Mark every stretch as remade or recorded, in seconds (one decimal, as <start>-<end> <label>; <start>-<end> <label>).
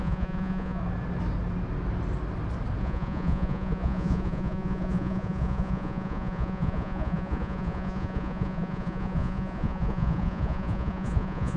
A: 0.0-0.8 remade; 0.8-2.8 recorded; 2.8-11.6 remade